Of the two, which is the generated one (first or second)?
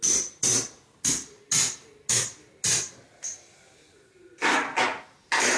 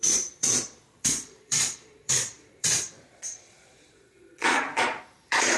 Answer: second